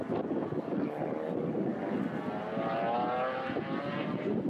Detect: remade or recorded recorded